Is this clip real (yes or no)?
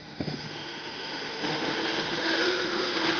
no